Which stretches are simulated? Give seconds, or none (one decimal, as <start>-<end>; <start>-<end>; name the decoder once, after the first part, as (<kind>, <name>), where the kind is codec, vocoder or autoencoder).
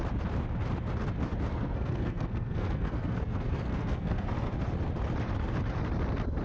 1.5-4.5 (codec, SNAC)